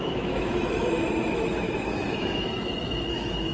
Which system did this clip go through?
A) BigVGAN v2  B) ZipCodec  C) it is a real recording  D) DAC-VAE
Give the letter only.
D